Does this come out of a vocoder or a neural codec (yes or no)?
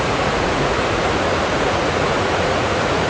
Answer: yes